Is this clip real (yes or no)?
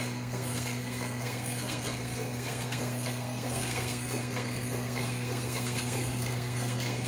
no